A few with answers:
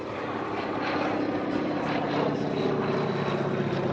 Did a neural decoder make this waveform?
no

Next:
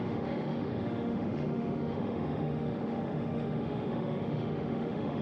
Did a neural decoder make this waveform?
yes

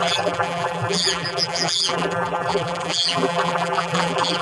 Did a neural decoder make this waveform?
yes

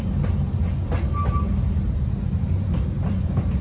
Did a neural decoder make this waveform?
no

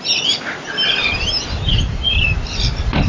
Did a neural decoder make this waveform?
no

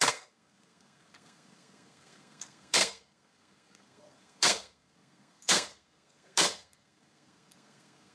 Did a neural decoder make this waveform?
yes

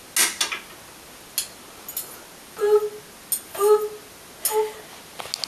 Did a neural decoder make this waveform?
no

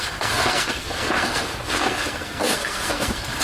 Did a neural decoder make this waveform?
yes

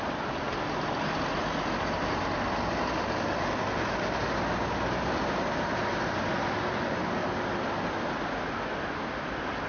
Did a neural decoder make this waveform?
no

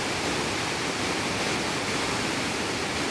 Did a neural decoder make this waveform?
no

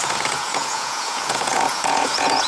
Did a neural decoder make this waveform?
yes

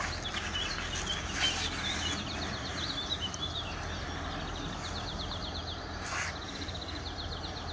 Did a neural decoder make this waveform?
no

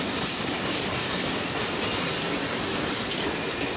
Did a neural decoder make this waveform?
no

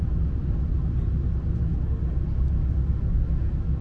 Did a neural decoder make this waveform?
no